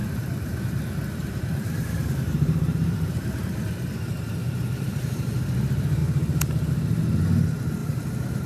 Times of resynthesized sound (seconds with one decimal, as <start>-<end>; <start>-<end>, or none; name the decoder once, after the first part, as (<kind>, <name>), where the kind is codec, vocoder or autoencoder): 0.0-3.1 (vocoder, BigVGAN v2); 4.4-5.4; 6.0-6.7